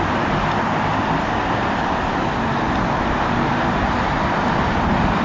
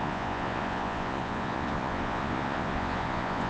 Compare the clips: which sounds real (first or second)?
first